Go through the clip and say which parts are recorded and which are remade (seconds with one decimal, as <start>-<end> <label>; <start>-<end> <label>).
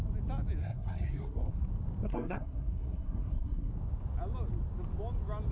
0.0-0.6 recorded; 0.6-1.5 remade; 1.5-2.1 recorded; 2.1-3.7 remade; 3.7-5.5 recorded